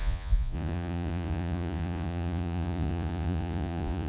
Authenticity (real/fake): fake